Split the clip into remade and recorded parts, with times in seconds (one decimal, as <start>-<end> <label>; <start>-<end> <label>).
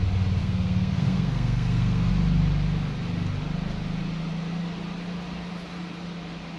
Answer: 0.0-0.4 recorded; 0.4-2.1 remade; 2.1-6.6 recorded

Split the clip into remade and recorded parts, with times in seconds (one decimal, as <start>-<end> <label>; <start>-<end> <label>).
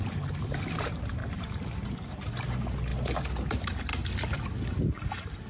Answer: 0.0-2.9 remade; 2.9-3.5 recorded; 3.5-3.9 remade; 3.9-4.8 recorded; 4.8-5.5 remade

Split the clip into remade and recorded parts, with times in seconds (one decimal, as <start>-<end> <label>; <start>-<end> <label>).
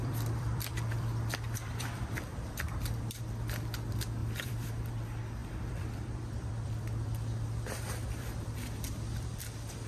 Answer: 0.0-3.2 remade; 3.2-4.2 recorded; 4.2-4.9 remade; 4.9-5.4 recorded; 5.4-9.4 remade; 9.4-9.9 recorded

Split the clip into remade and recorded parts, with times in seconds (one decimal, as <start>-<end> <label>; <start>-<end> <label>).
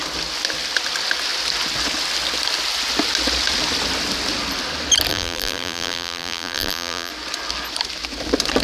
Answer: 0.0-5.1 recorded; 5.1-7.1 remade; 7.1-8.6 recorded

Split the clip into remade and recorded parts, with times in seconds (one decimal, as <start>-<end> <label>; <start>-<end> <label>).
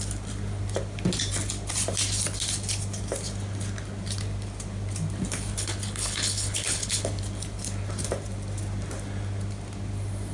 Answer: 0.0-5.5 recorded; 5.5-7.2 remade; 7.2-10.3 recorded